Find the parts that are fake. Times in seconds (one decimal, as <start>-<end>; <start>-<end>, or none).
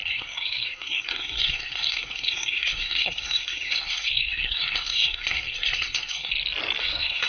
0.0-6.3; 6.8-7.3